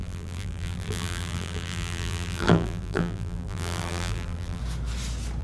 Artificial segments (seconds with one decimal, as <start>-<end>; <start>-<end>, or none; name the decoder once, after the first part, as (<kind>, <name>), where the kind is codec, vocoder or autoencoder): 0.0-4.6 (vocoder, BigVGAN v2)